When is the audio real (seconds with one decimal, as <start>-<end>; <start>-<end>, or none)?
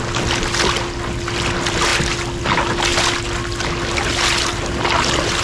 0.0-5.4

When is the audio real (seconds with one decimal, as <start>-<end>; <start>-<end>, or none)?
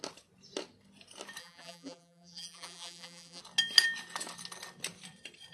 0.0-1.4; 3.4-5.5